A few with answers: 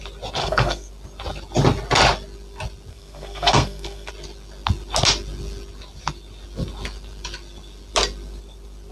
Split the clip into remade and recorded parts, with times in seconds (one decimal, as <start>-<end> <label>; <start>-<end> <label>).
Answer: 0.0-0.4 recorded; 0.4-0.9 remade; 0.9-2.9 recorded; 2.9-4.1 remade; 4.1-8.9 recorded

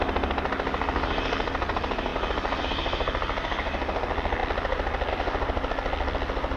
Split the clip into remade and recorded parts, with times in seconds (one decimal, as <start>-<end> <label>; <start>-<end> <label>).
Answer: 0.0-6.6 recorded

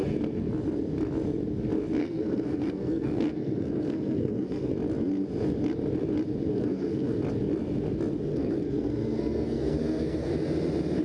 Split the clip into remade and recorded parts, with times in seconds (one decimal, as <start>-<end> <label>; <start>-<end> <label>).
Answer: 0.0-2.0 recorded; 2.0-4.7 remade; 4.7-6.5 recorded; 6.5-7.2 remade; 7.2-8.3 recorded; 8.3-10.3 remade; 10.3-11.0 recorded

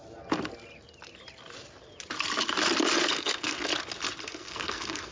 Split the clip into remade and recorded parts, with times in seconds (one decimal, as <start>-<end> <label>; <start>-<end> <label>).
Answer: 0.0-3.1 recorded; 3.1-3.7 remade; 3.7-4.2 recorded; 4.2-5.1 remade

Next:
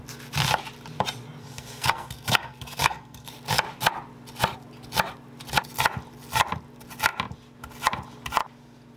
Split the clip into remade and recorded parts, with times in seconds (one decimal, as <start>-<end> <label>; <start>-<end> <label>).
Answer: 0.0-1.4 recorded; 1.4-3.3 remade; 3.3-9.0 recorded

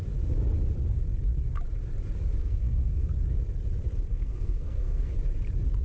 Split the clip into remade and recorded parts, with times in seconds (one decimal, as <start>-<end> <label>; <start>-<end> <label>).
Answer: 0.0-2.4 recorded; 2.4-3.1 remade; 3.1-4.1 recorded; 4.1-5.1 remade; 5.1-5.8 recorded

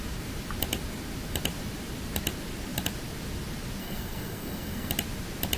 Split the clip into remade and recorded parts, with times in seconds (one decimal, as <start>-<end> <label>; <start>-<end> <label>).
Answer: 0.0-3.8 recorded; 3.8-4.9 remade; 4.9-5.6 recorded

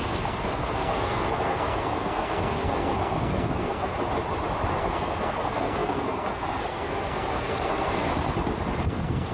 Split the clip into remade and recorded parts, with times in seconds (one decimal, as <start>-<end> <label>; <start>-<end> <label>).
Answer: 0.0-3.9 remade; 3.9-4.8 recorded; 4.8-8.1 remade; 8.1-8.8 recorded; 8.8-9.3 remade